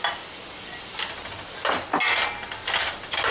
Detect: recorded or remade recorded